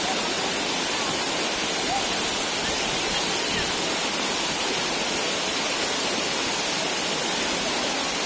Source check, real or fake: real